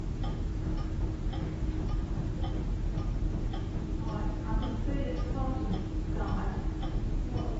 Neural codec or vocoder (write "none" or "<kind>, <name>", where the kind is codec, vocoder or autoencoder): none